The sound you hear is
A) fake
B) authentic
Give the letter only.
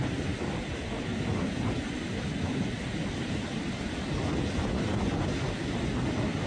B